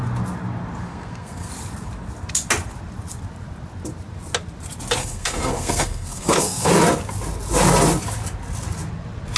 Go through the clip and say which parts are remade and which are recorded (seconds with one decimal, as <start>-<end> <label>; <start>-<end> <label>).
0.0-0.9 recorded; 0.9-1.5 remade; 1.5-5.0 recorded; 5.0-6.7 remade; 6.7-9.4 recorded